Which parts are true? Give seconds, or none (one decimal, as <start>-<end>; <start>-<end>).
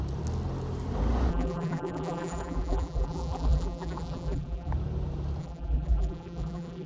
0.0-1.3; 4.7-5.4